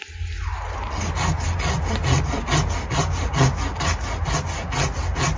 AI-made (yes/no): no